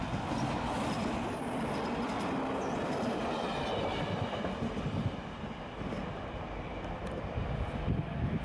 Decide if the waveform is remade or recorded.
recorded